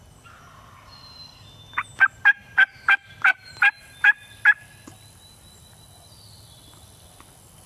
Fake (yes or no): no